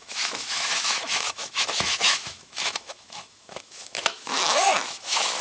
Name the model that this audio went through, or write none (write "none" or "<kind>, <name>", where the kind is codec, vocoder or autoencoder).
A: autoencoder, DAC-VAE